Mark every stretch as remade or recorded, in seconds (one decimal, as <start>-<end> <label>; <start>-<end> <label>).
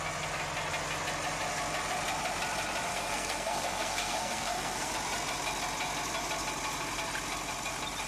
0.0-2.9 recorded; 2.9-4.9 remade; 4.9-8.1 recorded